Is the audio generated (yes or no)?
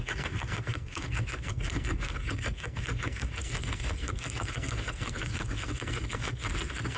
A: yes